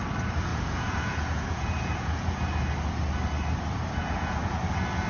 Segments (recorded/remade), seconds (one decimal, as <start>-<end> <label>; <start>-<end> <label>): 0.0-0.5 recorded; 0.5-2.5 remade; 2.5-4.0 recorded; 4.0-4.6 remade; 4.6-5.1 recorded